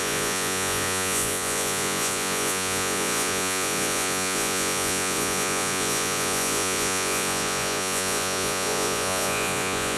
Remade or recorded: remade